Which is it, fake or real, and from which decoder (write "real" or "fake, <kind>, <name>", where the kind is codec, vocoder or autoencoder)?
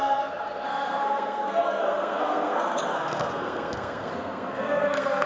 fake, codec, SNAC